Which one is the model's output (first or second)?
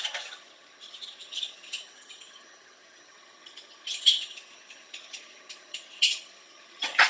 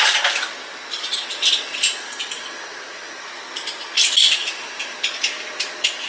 first